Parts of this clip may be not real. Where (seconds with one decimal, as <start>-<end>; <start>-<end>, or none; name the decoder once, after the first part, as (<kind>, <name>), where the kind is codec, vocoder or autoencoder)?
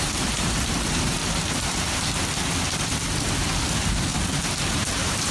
0.0-1.2 (vocoder, BigVGAN v2); 3.1-4.1; 4.6-5.3